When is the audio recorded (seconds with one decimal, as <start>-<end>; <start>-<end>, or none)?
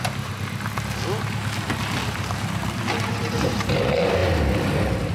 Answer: 0.0-2.0; 2.8-5.1